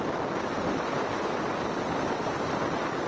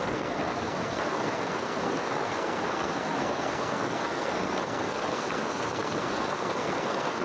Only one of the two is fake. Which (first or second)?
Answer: second